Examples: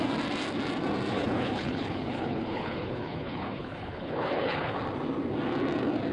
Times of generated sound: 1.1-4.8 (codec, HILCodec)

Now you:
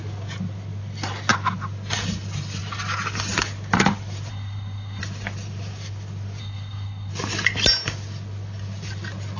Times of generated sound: 4.3-5.0 (codec, SNAC); 6.4-7.1